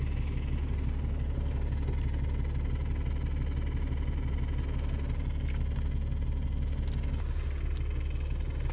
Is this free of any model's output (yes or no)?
yes